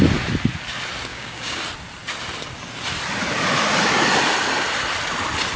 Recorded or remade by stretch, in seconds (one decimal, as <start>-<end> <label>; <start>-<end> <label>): 0.0-1.1 recorded; 1.1-1.6 remade; 1.6-5.6 recorded